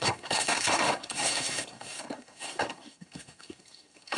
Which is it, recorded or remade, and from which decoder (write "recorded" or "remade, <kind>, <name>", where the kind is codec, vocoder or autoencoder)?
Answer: remade, codec, SNAC